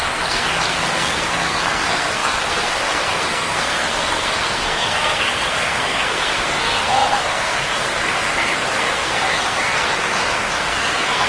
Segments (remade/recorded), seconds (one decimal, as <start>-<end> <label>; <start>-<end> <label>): 0.0-11.3 remade